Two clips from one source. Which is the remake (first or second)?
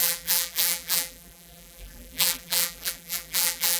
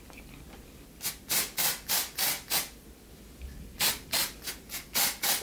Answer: first